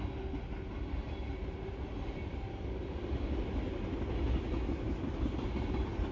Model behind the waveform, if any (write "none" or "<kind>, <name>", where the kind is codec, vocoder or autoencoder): none